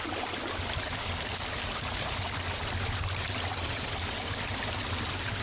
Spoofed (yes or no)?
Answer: no